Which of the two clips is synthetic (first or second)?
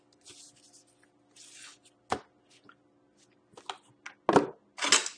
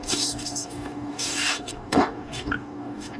second